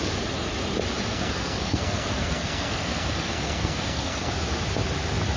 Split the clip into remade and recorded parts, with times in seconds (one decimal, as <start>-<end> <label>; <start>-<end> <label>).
0.0-1.1 recorded; 1.1-4.3 remade; 4.3-5.4 recorded